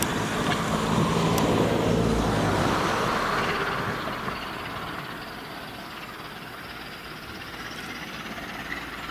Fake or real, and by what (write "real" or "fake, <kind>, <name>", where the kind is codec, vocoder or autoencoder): real